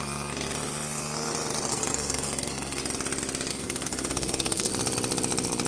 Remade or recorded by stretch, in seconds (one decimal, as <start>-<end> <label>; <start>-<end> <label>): 0.0-1.7 recorded; 1.7-2.8 remade; 2.8-3.5 recorded; 3.5-4.7 remade; 4.7-5.7 recorded